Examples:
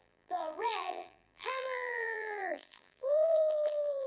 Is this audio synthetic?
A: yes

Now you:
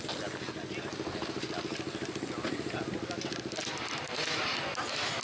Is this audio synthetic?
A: no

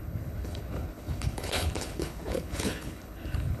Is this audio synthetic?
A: yes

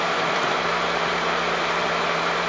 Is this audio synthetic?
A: yes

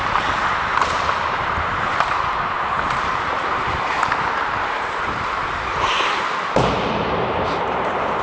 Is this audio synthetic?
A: yes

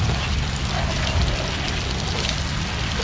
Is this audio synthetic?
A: no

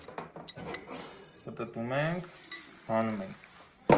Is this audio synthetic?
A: no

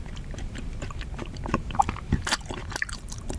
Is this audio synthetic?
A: yes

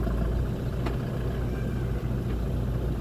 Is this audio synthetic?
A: no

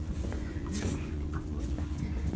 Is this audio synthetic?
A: yes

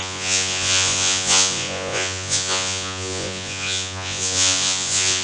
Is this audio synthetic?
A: yes